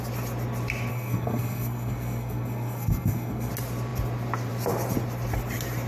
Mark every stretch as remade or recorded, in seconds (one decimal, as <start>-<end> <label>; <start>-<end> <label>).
0.0-0.9 recorded; 0.9-3.5 remade; 3.5-5.9 recorded